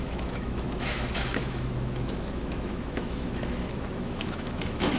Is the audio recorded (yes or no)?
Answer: no